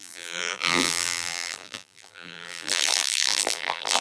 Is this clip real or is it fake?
fake